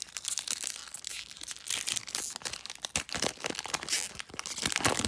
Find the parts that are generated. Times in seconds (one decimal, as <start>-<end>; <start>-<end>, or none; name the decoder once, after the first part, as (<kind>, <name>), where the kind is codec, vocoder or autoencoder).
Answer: none